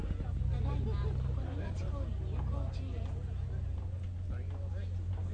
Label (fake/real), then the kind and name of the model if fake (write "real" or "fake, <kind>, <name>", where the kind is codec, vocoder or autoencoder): real